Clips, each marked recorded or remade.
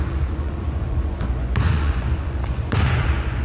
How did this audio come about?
remade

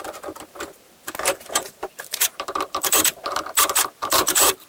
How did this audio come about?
remade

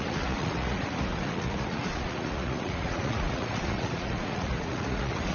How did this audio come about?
remade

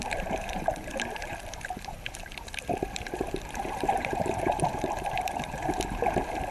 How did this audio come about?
remade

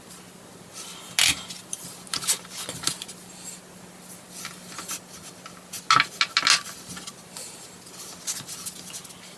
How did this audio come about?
recorded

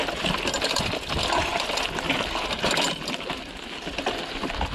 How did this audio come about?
recorded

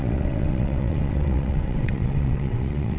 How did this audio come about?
remade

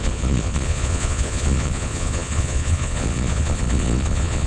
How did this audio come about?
remade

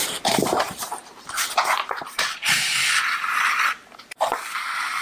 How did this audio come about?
remade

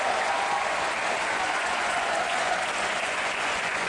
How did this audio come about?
remade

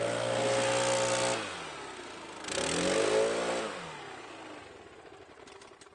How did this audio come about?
recorded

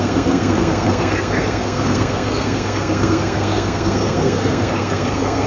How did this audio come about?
remade